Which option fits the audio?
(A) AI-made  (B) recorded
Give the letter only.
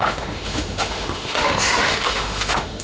A